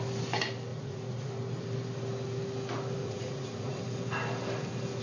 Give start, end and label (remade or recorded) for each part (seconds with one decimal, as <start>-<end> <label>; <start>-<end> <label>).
0.0-0.7 recorded; 0.7-1.3 remade; 1.3-3.0 recorded; 3.0-3.8 remade; 3.8-5.0 recorded